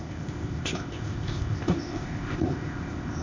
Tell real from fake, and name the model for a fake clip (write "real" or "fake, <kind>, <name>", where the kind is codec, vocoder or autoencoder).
fake, codec, ZipCodec